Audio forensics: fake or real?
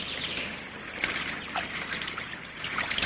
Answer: real